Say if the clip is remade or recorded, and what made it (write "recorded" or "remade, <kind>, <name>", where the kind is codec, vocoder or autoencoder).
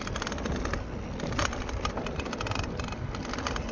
recorded